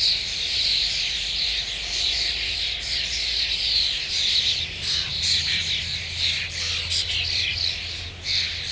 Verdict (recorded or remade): recorded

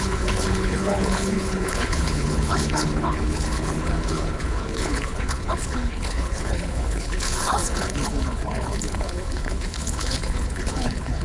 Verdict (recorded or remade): remade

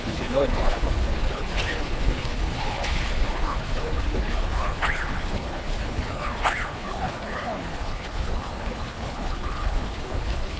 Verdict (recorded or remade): remade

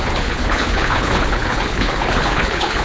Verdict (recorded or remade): remade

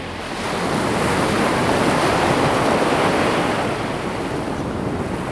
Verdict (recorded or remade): recorded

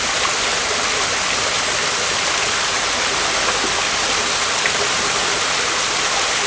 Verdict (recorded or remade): recorded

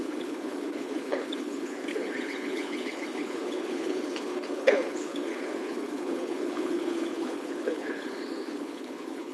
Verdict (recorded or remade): remade